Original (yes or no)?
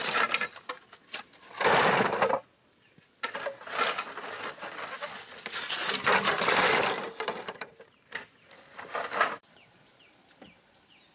yes